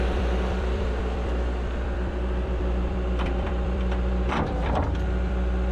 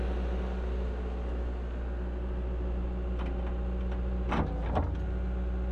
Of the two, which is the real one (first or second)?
second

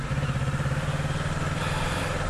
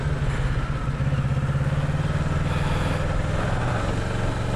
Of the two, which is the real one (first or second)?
second